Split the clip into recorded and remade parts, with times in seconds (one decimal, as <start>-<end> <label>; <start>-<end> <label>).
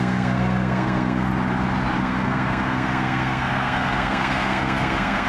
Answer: 0.0-1.3 remade; 1.3-2.0 recorded; 2.0-5.3 remade